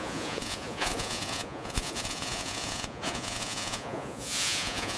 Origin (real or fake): fake